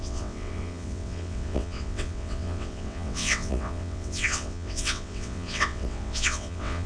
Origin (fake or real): fake